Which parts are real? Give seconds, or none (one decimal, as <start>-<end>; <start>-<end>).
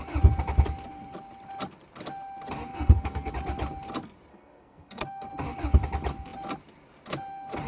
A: 0.0-2.7; 3.3-4.3; 5.3-7.7